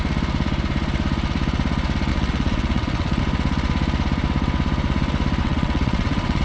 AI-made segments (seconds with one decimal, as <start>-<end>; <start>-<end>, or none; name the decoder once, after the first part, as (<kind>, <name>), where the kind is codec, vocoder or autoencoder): 2.1-3.2 (vocoder, WaveNeXt); 5.4-6.4